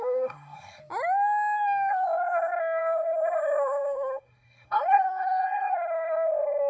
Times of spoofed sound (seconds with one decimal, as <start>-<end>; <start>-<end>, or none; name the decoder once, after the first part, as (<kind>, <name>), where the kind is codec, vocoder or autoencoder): 0.0-0.8 (codec, SNAC); 1.9-6.7